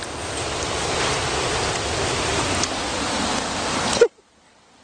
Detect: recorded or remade recorded